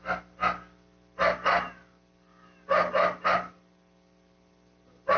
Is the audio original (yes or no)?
yes